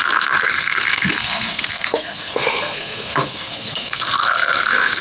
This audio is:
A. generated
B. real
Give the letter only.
A